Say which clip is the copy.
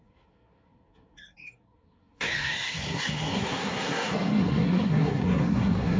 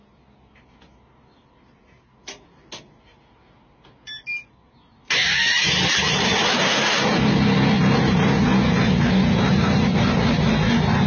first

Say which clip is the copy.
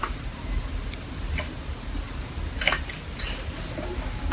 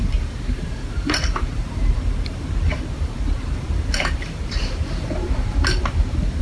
second